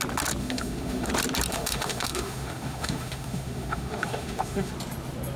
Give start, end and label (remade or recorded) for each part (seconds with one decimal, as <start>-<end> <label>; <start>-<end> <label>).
0.0-0.4 recorded; 0.4-1.1 remade; 1.1-1.5 recorded; 1.5-4.7 remade; 4.7-5.4 recorded